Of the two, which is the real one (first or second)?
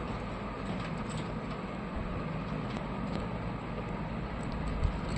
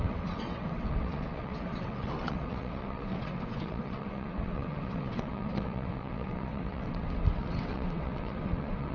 first